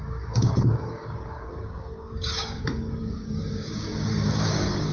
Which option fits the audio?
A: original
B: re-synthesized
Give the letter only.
B